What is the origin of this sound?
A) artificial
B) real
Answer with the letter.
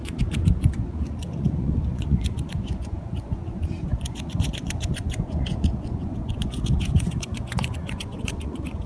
A